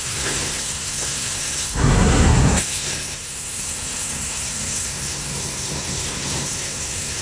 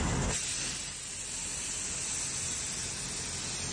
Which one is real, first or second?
second